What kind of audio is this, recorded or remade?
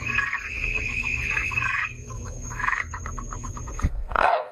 remade